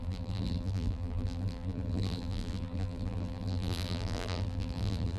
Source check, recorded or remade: remade